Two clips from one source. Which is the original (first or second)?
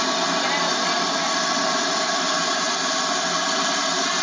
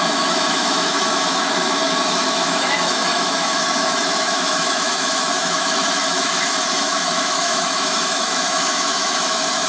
first